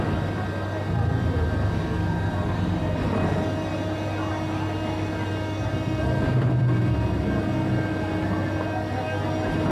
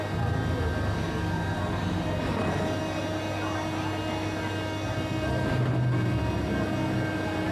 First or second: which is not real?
first